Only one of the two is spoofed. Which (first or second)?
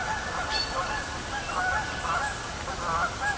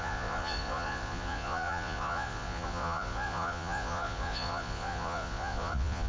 second